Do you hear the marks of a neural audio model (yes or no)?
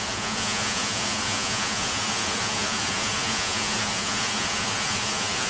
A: yes